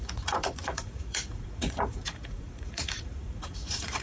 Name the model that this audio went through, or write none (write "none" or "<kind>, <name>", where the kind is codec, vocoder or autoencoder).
vocoder, Vocos